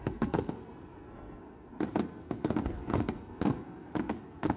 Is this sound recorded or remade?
remade